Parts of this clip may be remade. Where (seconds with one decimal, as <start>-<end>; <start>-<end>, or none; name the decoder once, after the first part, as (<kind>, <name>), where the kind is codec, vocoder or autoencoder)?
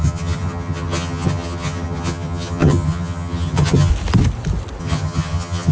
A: 0.0-3.9 (vocoder, HiFi-GAN); 4.8-5.7